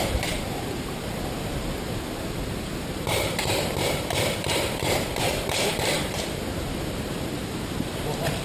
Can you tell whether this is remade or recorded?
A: remade